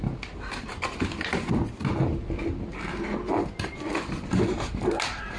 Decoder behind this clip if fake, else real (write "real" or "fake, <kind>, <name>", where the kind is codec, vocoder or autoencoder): real